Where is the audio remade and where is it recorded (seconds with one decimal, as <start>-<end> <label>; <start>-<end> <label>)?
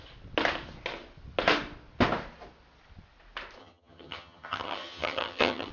0.0-3.6 recorded; 3.6-5.7 remade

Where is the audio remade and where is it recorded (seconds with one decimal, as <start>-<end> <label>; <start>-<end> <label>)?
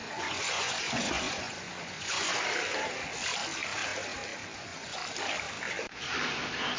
0.0-2.3 remade; 2.3-4.6 recorded; 4.6-5.0 remade; 5.0-6.8 recorded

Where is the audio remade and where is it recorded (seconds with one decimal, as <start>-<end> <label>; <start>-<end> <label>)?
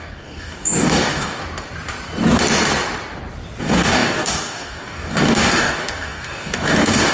0.0-1.4 remade; 1.4-3.6 recorded; 3.6-7.1 remade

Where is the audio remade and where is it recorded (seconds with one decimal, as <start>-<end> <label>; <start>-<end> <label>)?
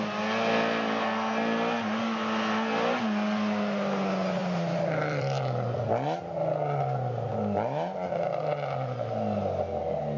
0.0-4.4 recorded; 4.4-5.8 remade; 5.8-10.2 recorded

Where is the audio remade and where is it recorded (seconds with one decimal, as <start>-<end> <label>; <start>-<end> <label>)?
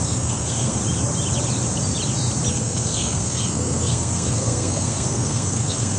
0.0-0.8 remade; 0.8-2.5 recorded; 2.5-6.0 remade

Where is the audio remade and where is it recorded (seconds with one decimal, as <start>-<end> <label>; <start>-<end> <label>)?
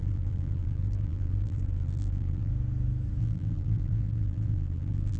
0.0-2.5 remade; 2.5-3.2 recorded; 3.2-5.2 remade